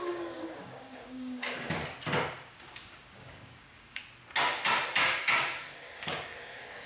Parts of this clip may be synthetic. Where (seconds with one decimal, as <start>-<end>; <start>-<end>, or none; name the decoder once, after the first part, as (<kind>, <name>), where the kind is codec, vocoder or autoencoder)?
0.0-1.8 (codec, DAC); 2.5-4.0; 5.2-6.9